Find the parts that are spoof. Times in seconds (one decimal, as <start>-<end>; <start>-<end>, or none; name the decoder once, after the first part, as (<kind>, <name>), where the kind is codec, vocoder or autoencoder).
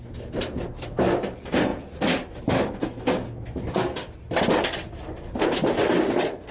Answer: 1.7-2.4 (vocoder, BigVGAN v2); 4.0-5.6